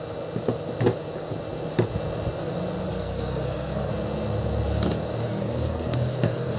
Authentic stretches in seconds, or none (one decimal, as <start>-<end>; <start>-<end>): 0.0-2.9; 3.9-5.3